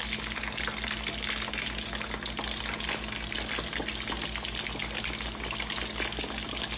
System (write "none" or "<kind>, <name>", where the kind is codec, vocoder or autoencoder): none